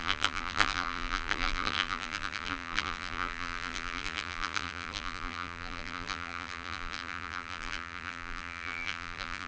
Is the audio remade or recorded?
remade